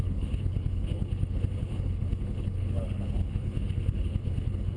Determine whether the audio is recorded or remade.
remade